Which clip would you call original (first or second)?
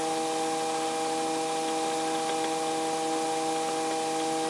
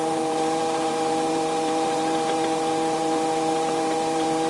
first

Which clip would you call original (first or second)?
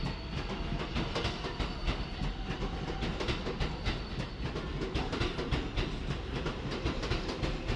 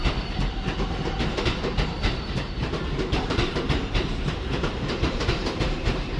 first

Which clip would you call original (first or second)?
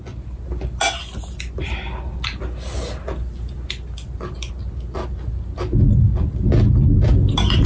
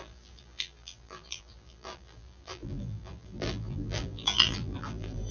first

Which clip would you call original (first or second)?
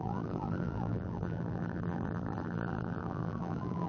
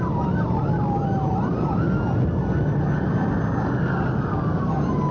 second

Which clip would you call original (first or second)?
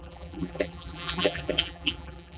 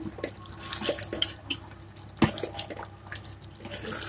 second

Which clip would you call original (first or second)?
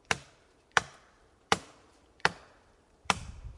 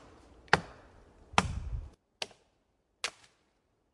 second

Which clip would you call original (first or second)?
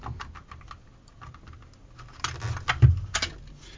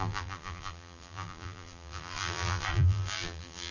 first